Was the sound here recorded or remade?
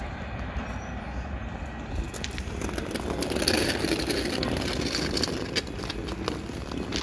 recorded